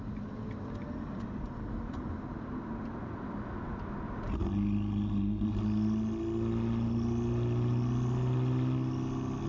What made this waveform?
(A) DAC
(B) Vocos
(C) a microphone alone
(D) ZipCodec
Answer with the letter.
C